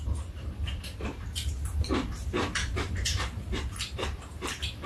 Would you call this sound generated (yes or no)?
yes